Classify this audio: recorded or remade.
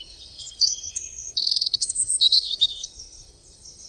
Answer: remade